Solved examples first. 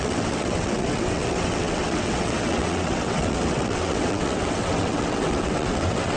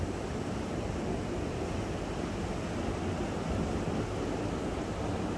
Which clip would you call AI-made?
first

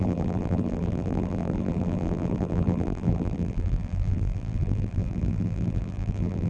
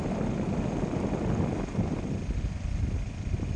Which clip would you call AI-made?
first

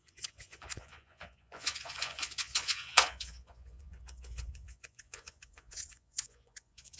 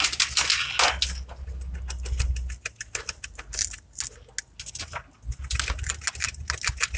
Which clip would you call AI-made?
first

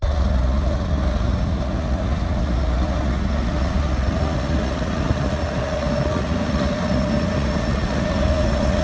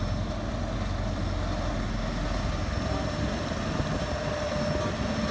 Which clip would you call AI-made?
first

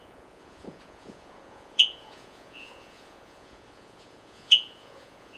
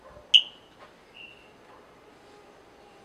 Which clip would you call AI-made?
first